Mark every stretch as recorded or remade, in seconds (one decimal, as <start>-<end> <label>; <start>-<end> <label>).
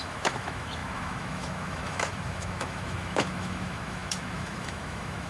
0.0-5.3 remade